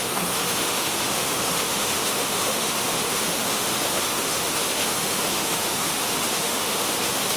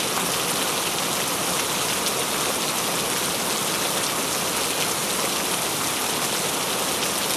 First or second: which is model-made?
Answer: first